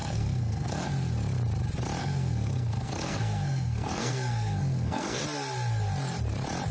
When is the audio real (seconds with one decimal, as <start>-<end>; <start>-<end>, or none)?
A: 0.9-2.0; 5.2-6.7